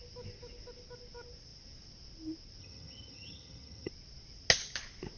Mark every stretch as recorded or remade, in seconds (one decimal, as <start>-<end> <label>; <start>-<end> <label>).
0.0-2.6 recorded; 2.6-3.9 remade; 3.9-5.2 recorded